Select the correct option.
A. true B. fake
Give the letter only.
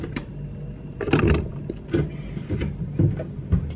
A